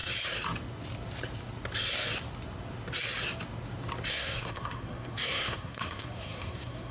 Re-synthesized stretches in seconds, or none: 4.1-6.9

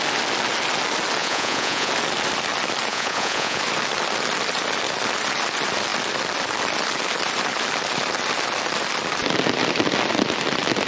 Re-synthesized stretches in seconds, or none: 1.2-1.9; 2.9-3.6